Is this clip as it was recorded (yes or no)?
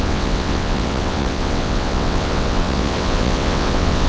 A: no